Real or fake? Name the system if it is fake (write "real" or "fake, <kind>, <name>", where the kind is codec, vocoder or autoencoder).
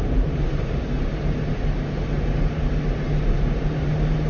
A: fake, vocoder, BigVGAN v2